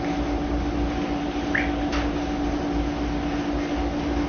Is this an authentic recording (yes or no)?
yes